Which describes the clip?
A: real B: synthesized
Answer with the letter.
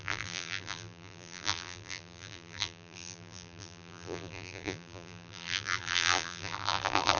B